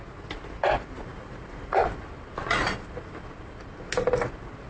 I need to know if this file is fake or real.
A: real